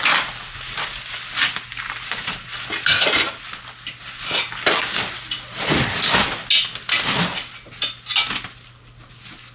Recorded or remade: recorded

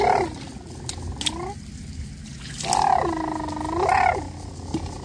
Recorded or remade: recorded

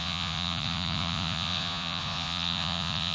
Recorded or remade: remade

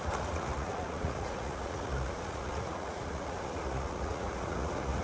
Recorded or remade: remade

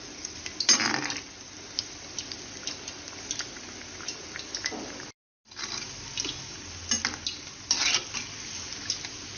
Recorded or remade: recorded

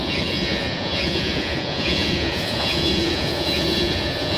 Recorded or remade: remade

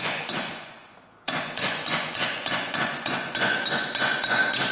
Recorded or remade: remade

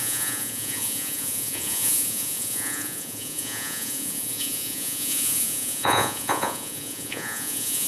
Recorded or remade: remade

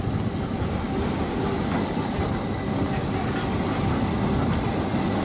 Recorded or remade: recorded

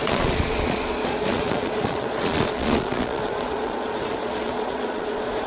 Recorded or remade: remade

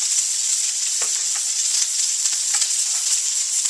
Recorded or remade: remade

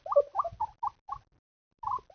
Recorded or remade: recorded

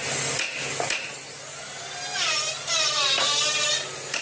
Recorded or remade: recorded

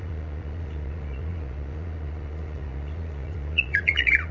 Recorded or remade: remade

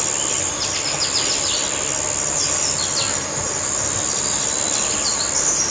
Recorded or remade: recorded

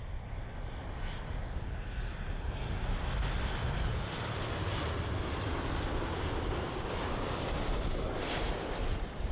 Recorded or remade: recorded